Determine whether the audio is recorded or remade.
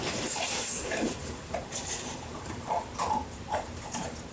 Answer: remade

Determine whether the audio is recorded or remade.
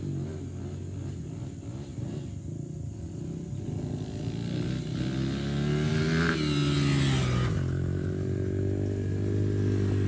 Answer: recorded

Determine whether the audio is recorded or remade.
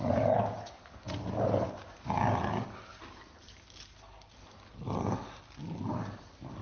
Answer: recorded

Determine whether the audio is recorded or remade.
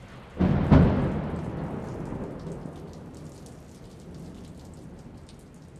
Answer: recorded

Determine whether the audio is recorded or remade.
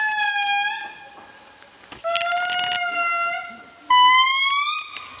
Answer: recorded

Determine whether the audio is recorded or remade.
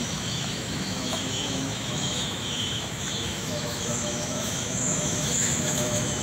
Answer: remade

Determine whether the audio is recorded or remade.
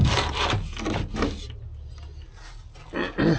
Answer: recorded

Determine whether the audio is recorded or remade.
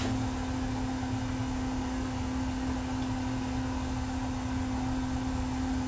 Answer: recorded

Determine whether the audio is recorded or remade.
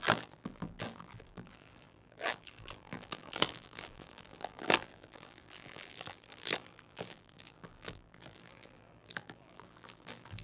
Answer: remade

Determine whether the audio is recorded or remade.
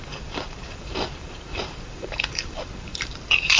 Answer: remade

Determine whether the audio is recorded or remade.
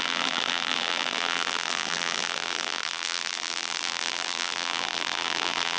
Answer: remade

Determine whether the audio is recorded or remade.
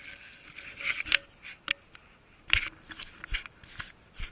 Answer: recorded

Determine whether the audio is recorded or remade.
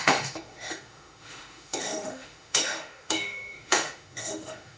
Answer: remade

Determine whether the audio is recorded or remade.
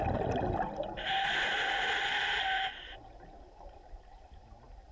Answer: recorded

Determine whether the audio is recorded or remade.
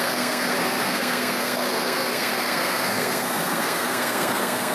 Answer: remade